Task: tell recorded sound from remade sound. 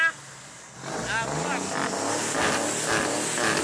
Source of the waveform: recorded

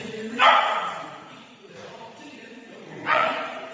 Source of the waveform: remade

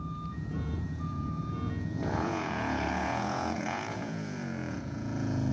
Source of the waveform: remade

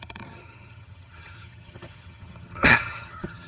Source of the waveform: remade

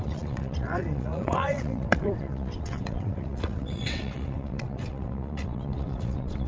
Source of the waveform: remade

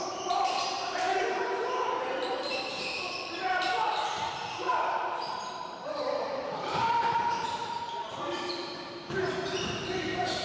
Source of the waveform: remade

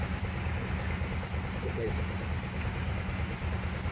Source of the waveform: recorded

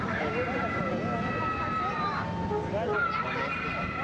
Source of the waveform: recorded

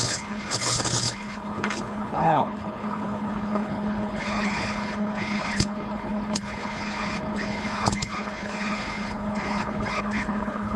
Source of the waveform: remade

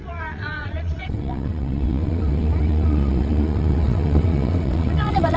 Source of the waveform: remade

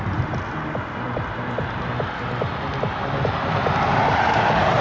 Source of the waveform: recorded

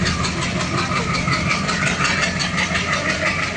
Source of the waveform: recorded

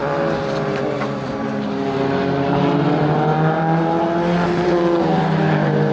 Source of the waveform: recorded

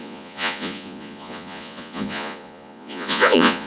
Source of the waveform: remade